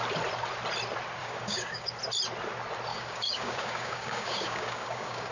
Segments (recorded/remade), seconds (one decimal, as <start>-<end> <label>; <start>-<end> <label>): 0.0-1.2 recorded; 1.2-2.0 remade; 2.0-2.9 recorded; 2.9-5.3 remade

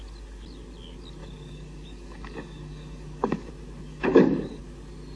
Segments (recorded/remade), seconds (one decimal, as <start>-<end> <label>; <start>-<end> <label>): 0.0-1.2 recorded; 1.2-3.5 remade; 3.5-3.9 recorded; 3.9-4.6 remade; 4.6-5.2 recorded